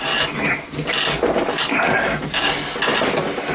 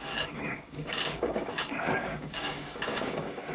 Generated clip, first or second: second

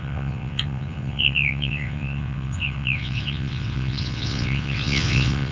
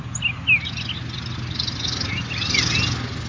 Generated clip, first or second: first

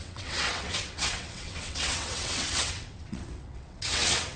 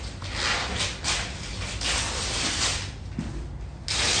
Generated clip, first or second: first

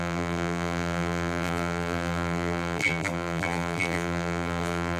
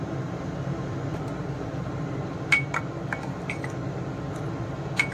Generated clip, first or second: first